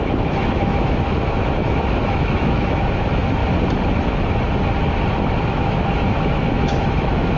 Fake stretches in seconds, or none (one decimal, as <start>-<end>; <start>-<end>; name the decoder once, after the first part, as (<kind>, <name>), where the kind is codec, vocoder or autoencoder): 0.0-3.4 (autoencoder, DAC-VAE); 5.5-7.4